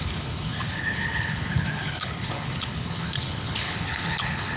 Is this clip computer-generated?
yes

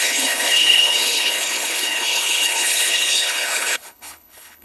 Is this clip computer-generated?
yes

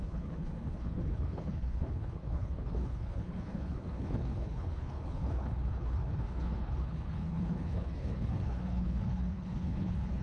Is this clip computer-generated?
yes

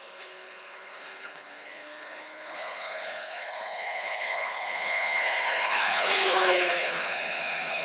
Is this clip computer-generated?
yes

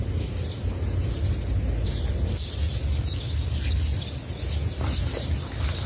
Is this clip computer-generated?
no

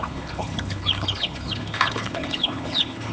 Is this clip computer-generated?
yes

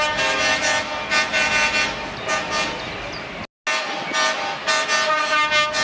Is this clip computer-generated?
no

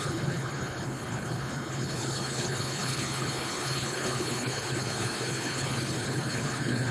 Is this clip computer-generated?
yes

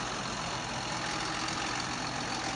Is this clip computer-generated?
no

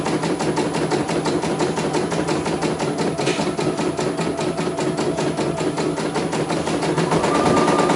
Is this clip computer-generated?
no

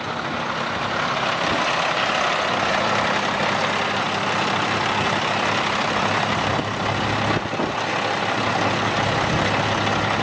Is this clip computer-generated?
no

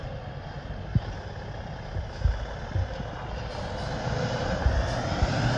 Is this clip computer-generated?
no